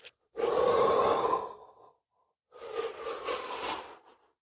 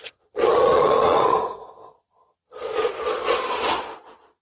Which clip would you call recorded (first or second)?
first